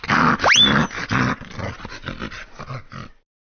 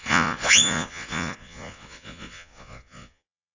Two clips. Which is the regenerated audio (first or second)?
second